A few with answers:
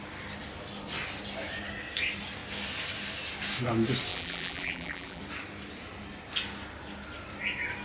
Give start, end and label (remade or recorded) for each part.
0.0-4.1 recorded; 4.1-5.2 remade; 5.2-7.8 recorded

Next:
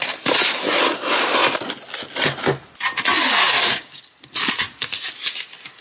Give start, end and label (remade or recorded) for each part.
0.0-3.4 recorded; 3.4-4.0 remade; 4.0-5.8 recorded

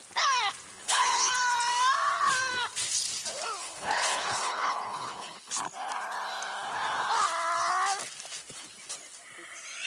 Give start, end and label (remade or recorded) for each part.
0.0-0.8 recorded; 0.8-1.3 remade; 1.3-3.6 recorded; 3.6-5.5 remade; 5.5-9.9 recorded

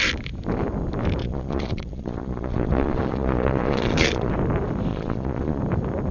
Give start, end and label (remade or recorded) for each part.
0.0-1.2 recorded; 1.2-4.3 remade; 4.3-4.9 recorded; 4.9-5.6 remade; 5.6-6.1 recorded